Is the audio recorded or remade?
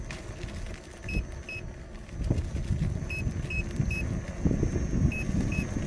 recorded